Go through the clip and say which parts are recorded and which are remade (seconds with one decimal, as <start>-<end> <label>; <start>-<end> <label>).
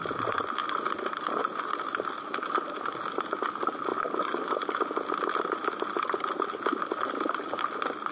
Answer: 0.0-8.1 recorded